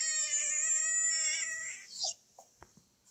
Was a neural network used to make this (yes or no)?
no